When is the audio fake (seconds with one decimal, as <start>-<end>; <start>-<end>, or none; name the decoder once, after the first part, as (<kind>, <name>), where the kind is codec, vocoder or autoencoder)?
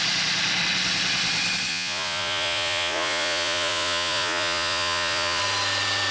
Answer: 1.7-5.4 (vocoder, Vocos)